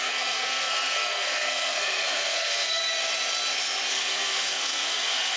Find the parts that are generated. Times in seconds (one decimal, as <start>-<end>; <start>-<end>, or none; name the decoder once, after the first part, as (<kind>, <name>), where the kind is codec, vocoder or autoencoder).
0.0-2.8 (codec, SNAC); 3.9-5.4